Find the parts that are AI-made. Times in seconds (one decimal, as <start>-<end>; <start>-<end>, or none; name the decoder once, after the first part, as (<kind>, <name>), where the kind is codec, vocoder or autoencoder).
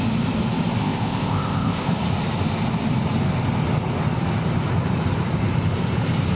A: 0.8-1.9 (codec, ZipCodec)